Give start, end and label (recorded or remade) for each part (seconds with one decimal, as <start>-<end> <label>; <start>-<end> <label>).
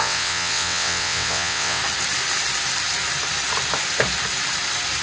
0.0-1.8 remade; 1.8-5.0 recorded